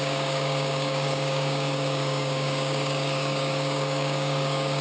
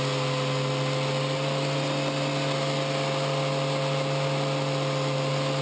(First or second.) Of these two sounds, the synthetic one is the first